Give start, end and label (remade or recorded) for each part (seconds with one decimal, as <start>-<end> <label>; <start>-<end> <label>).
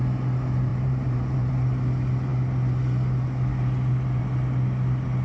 0.0-0.7 recorded; 0.7-1.5 remade; 1.5-5.2 recorded